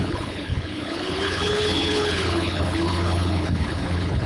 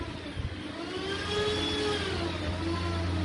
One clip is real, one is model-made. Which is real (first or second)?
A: second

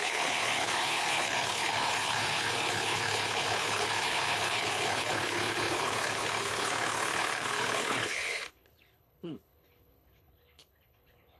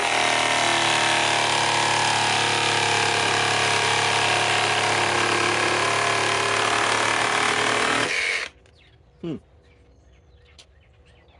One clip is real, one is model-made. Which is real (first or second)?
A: second